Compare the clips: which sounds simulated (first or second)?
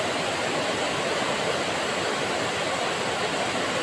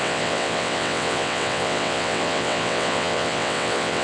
second